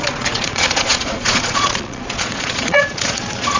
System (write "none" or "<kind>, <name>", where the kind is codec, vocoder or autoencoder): vocoder, Vocos